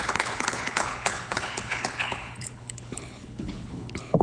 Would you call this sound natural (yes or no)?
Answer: no